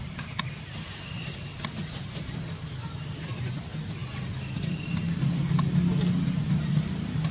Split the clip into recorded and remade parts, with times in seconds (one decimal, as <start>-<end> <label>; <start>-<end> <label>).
0.0-7.3 recorded